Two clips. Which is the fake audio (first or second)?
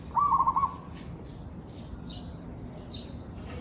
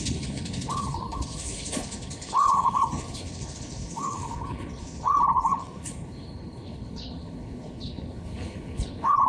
second